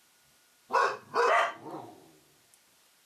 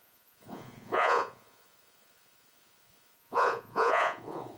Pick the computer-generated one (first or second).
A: second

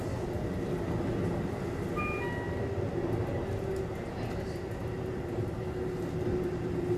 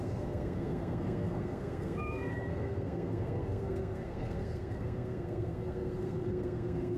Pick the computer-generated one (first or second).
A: second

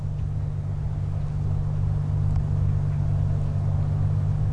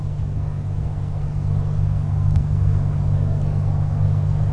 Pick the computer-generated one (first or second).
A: second